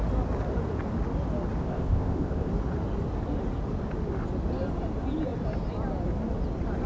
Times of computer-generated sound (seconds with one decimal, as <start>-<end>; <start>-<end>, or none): 1.6-2.5